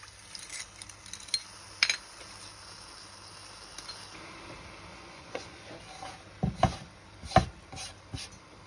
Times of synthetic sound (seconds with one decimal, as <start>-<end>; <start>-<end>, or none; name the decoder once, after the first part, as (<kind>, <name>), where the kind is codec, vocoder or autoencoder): 4.9-5.7 (vocoder, Vocos)